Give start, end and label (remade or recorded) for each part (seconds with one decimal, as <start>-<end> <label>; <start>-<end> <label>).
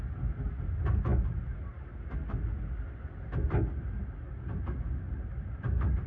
0.0-6.1 recorded